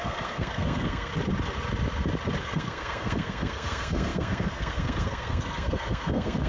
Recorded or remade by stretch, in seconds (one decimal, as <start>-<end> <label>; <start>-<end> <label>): 0.0-1.1 remade; 1.1-2.4 recorded; 2.4-6.5 remade